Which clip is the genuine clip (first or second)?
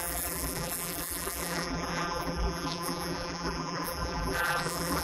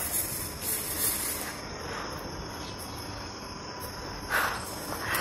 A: second